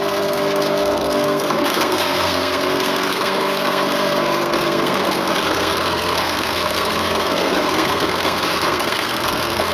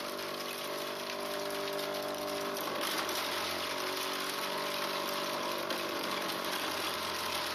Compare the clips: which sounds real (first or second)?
second